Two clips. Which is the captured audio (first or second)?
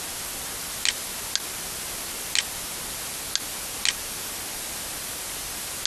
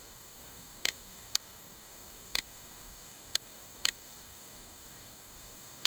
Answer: first